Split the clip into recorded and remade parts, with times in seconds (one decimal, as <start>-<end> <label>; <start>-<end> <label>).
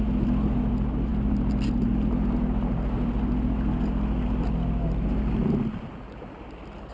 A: 0.0-6.9 recorded